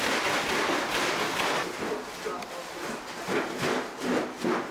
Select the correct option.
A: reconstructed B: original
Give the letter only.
B